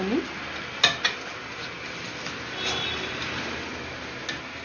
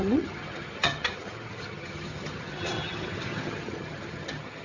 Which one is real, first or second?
first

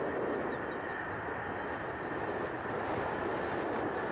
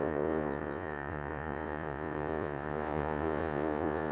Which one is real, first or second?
first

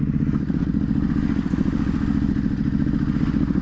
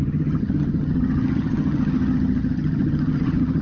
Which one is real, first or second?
first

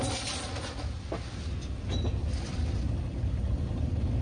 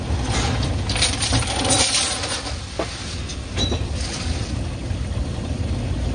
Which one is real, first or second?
first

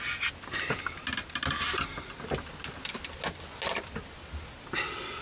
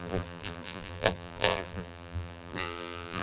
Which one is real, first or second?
first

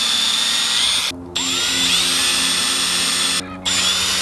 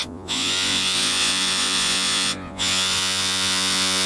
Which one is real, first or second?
first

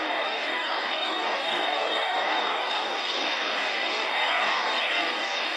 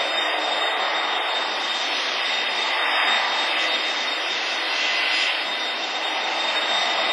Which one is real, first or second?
second